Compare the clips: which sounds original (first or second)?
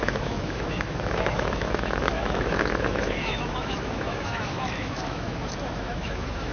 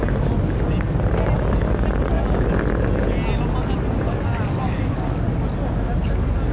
second